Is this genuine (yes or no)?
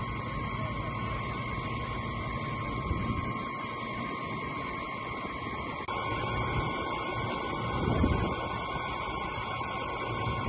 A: yes